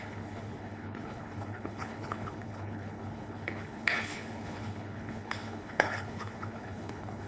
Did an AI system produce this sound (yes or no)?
yes